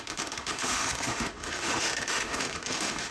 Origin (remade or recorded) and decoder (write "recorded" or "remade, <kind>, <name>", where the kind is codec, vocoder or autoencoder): remade, autoencoder, DAC-VAE